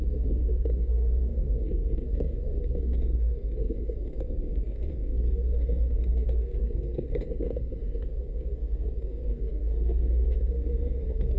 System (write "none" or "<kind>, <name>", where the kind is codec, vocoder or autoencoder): codec, SNAC